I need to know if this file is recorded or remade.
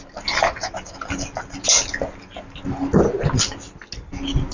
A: recorded